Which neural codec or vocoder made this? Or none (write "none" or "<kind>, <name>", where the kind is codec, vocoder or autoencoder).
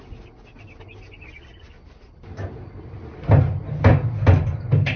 none